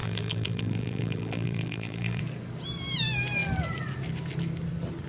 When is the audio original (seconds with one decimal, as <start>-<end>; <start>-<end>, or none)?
2.2-5.1